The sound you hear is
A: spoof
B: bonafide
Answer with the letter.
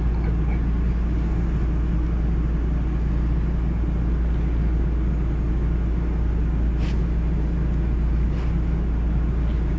B